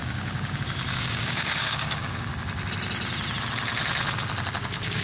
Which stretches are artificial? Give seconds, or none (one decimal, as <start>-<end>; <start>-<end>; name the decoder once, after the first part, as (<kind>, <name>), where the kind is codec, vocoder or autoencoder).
0.0-2.3 (codec, DAC); 4.5-5.0